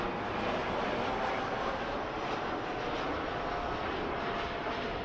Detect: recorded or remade recorded